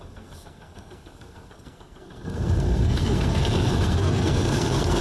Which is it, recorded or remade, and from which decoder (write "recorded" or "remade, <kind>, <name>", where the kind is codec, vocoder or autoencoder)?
remade, codec, SNAC